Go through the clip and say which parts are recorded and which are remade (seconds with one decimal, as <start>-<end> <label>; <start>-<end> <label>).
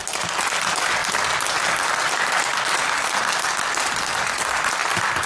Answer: 0.0-5.3 recorded